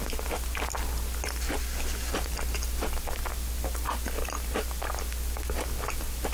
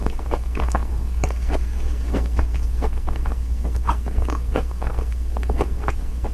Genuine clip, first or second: first